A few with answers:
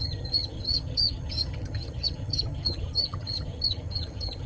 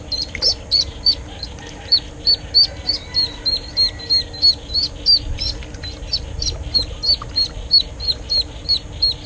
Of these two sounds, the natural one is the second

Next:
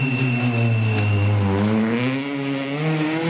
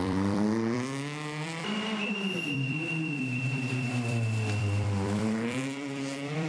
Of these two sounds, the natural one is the first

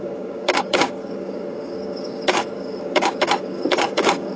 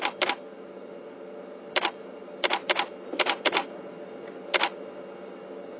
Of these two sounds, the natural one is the second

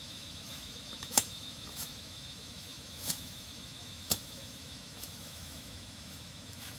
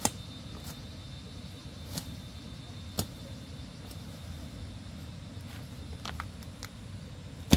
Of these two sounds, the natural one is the second